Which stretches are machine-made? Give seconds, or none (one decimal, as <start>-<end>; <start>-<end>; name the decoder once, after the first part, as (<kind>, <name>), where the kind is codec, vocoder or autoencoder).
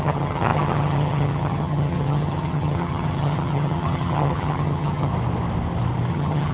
0.0-5.1 (vocoder, HiFi-GAN); 6.1-6.5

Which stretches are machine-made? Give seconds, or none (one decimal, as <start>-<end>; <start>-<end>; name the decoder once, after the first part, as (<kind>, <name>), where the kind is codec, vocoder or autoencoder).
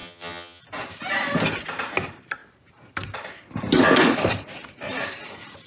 0.0-0.6 (vocoder, HiFi-GAN)